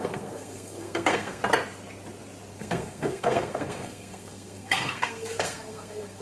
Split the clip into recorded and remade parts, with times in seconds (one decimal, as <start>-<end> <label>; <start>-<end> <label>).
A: 0.0-1.4 remade; 1.4-2.5 recorded; 2.5-6.2 remade